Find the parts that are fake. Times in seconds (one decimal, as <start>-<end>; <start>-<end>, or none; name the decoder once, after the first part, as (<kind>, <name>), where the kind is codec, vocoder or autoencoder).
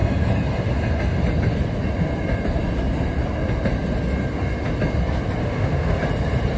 5.4-6.0 (autoencoder, DAC-VAE)